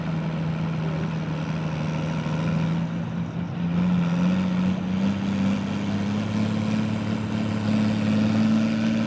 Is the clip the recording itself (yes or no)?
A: yes